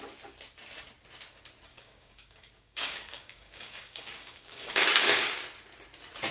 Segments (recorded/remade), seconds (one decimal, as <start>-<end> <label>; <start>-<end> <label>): 0.0-1.7 recorded; 1.7-5.3 remade; 5.3-6.3 recorded